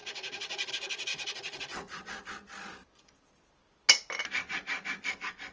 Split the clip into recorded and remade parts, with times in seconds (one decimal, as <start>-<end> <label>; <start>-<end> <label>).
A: 0.0-0.7 remade; 0.7-1.1 recorded; 1.1-2.1 remade; 2.1-5.5 recorded